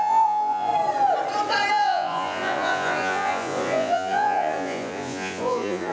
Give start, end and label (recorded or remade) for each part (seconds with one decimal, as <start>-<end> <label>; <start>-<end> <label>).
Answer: 0.0-0.7 remade; 0.7-1.7 recorded; 1.7-5.9 remade